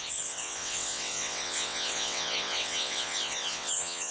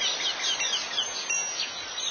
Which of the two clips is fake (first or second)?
first